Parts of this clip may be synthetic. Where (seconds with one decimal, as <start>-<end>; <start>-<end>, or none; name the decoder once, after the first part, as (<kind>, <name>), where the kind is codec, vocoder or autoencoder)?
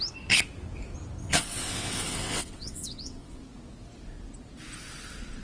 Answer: 1.2-3.4 (vocoder, WaveNeXt)